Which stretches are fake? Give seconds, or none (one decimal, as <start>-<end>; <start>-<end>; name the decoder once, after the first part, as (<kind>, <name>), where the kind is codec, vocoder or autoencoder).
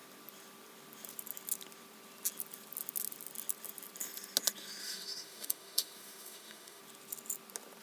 4.8-6.8 (autoencoder, DAC-VAE)